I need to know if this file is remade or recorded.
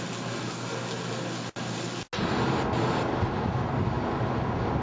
recorded